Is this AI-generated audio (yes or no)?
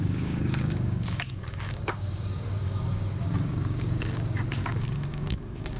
yes